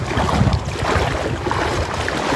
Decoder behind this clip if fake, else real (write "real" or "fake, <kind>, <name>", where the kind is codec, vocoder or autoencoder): real